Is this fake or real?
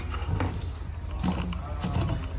real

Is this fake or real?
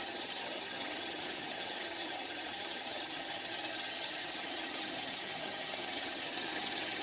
fake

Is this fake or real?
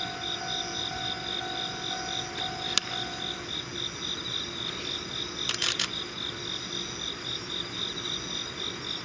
real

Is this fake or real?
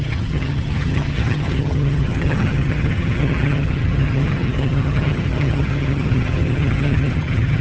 fake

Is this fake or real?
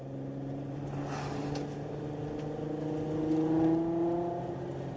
real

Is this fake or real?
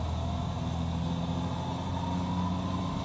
real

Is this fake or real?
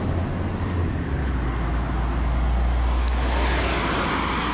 real